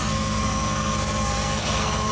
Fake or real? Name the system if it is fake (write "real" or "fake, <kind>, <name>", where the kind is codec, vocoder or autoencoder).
fake, codec, SNAC